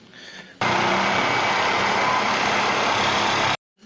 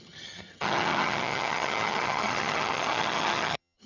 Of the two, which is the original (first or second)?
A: first